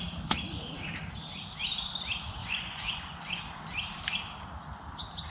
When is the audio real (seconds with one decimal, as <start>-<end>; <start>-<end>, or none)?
0.0-2.4; 3.4-5.3